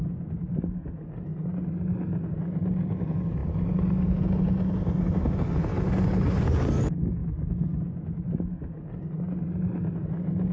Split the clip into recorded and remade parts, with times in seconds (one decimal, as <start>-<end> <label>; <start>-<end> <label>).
0.0-10.5 recorded